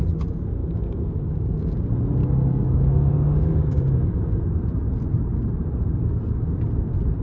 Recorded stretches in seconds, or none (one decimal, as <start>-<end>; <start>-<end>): 0.0-0.6; 1.7-2.2; 4.4-7.2